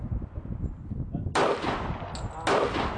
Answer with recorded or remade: recorded